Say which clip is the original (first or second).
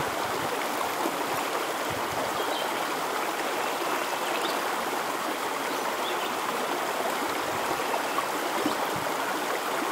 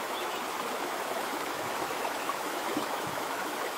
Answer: first